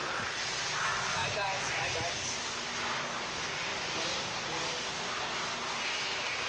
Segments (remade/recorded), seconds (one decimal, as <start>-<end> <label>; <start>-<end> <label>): 0.0-0.6 remade; 0.6-1.2 recorded; 1.2-2.2 remade; 2.2-3.7 recorded; 3.7-4.5 remade; 4.5-6.5 recorded

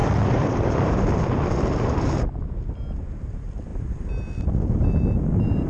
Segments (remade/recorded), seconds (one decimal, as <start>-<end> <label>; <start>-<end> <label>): 0.0-1.0 remade; 1.0-5.7 recorded

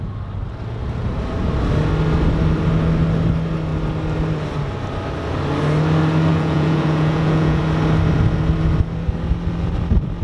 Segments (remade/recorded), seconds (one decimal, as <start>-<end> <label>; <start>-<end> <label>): 0.0-6.3 recorded; 6.3-7.6 remade; 7.6-10.2 recorded

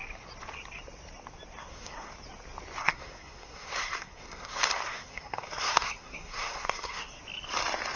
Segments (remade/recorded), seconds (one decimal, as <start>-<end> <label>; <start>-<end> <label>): 0.0-1.6 recorded; 1.6-2.1 remade; 2.1-2.8 recorded; 2.8-7.2 remade; 7.2-8.0 recorded